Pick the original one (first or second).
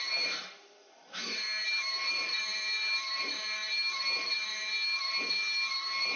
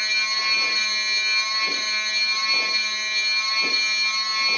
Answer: second